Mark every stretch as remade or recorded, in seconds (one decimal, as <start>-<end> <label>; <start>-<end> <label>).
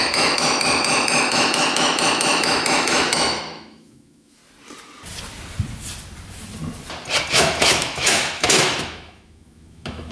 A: 0.0-4.4 remade; 4.4-7.3 recorded; 7.3-10.1 remade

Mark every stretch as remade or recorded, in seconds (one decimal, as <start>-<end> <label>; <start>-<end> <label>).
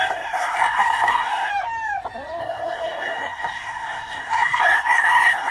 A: 0.0-1.5 remade; 1.5-2.4 recorded; 2.4-5.5 remade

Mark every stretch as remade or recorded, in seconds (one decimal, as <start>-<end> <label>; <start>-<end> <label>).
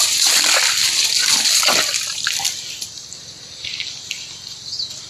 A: 0.0-0.8 recorded; 0.8-3.2 remade; 3.2-5.1 recorded